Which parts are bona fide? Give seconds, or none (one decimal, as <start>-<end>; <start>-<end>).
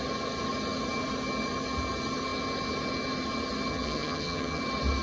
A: 0.0-3.7; 4.6-5.0